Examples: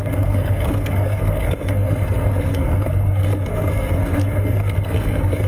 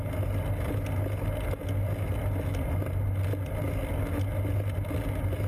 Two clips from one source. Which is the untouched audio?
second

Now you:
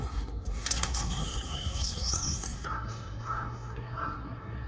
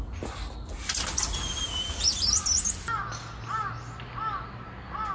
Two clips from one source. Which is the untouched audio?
second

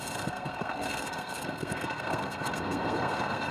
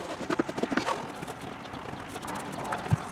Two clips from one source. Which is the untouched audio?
second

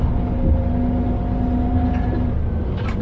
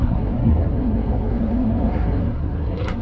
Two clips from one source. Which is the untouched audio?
first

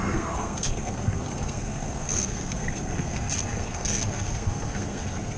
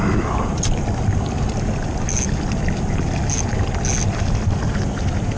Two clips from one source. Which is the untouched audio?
second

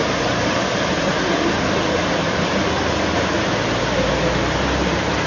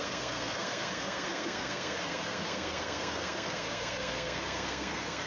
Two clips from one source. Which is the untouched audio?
first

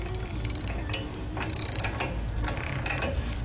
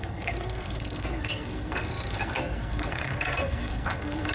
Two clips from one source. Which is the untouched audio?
first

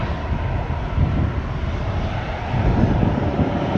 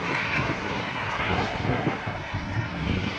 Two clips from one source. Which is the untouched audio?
first